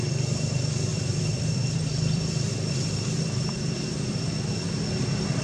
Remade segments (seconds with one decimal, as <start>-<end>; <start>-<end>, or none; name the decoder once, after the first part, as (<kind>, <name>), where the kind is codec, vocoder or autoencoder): 0.9-4.1 (vocoder, BigVGAN v2)

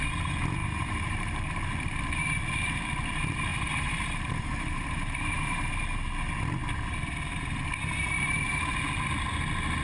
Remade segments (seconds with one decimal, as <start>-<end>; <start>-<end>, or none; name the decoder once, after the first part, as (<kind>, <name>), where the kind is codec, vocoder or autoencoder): 0.6-1.5 (vocoder, BigVGAN v2); 3.5-5.7

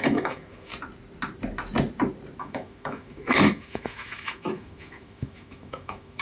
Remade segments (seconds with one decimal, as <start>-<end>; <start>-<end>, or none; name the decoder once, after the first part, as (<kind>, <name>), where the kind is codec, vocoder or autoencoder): 0.0-0.7 (autoencoder, DAC-VAE); 2.4-6.2

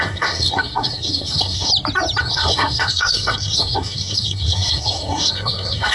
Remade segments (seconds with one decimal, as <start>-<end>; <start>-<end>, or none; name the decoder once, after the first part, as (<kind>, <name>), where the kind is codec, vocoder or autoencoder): 0.0-1.7 (codec, SNAC); 2.2-5.9

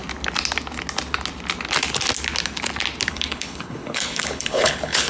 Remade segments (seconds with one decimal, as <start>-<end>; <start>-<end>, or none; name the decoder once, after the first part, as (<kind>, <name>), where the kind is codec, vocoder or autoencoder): 3.1-5.1 (codec, HILCodec)

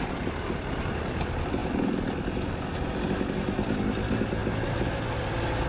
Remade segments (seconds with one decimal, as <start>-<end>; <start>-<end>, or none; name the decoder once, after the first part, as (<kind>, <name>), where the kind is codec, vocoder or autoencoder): none

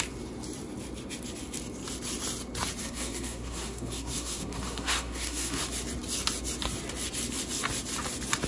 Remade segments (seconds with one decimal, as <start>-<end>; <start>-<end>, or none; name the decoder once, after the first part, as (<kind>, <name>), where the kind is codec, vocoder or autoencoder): 2.8-5.6 (codec, SNAC)